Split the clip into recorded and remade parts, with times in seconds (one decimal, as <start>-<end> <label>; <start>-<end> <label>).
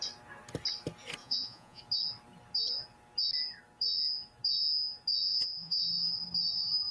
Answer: 0.0-1.2 recorded; 1.2-1.8 remade; 1.8-5.2 recorded; 5.2-5.9 remade; 5.9-6.9 recorded